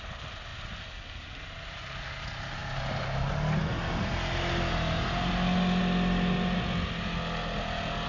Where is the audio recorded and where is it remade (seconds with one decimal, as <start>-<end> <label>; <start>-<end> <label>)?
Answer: 0.0-8.1 recorded